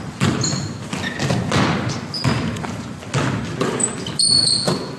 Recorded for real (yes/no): yes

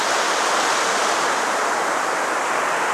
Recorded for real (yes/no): yes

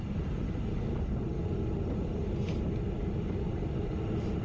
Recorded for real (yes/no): yes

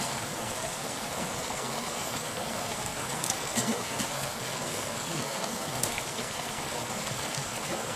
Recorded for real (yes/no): no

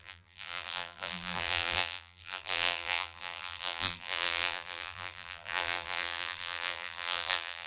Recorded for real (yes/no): no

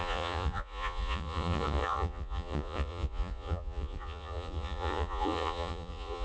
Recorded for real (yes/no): no